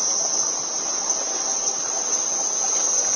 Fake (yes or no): no